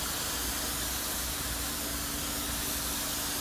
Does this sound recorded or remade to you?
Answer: recorded